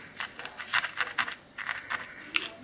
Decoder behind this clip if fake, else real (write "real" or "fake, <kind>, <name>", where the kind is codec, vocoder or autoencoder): real